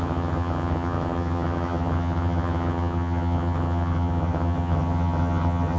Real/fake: fake